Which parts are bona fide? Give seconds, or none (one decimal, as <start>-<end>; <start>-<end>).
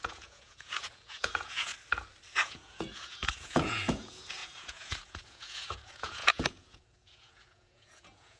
1.7-2.3